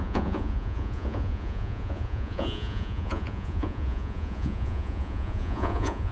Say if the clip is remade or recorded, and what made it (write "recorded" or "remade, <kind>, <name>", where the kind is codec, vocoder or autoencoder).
remade, vocoder, Vocos